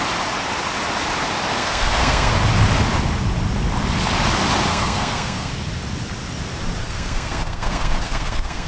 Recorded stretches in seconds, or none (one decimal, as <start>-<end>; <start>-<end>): 0.0-1.6; 2.3-4.7; 5.5-6.8